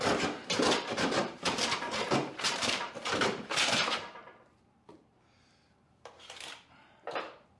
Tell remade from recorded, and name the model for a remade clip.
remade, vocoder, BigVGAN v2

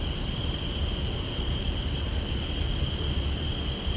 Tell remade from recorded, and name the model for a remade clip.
recorded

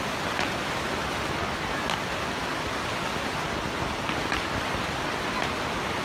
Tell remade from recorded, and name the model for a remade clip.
recorded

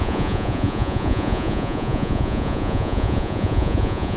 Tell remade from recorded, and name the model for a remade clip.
remade, vocoder, Vocos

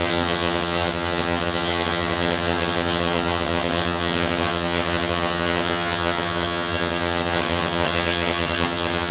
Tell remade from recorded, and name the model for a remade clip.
remade, vocoder, HiFi-GAN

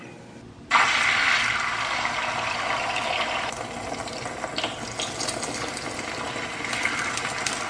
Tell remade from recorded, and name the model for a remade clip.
recorded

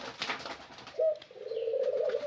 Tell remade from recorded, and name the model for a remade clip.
recorded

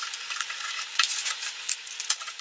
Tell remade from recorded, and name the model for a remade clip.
remade, vocoder, Vocos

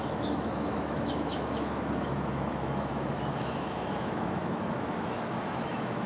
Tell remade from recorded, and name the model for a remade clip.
remade, autoencoder, DAC-VAE